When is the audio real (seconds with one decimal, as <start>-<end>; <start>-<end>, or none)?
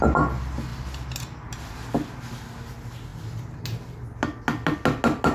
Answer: 0.0-5.3